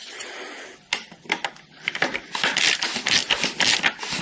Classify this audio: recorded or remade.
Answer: recorded